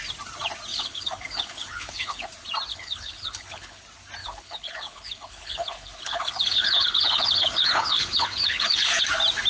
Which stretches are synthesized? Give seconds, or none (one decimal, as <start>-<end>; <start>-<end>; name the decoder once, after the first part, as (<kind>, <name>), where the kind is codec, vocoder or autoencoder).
0.7-2.3 (codec, HILCodec); 2.7-3.8; 4.2-9.0